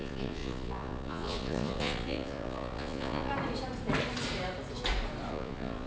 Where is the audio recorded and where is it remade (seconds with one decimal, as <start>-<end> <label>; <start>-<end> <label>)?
0.0-3.3 remade; 3.3-5.3 recorded; 5.3-5.9 remade